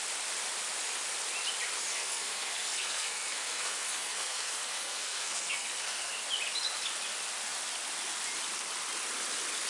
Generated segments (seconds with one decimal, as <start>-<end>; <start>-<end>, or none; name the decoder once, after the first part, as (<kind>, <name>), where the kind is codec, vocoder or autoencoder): 1.9-6.1 (codec, SNAC)